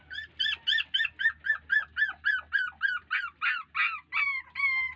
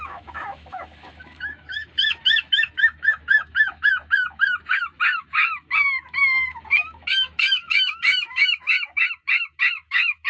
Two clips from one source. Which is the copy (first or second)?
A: second